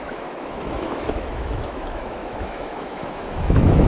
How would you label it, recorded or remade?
remade